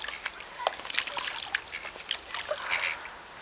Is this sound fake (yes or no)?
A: no